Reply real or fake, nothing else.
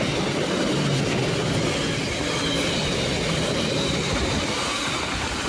real